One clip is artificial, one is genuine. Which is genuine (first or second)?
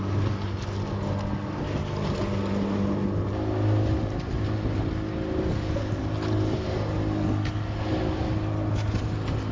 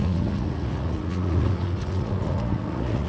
first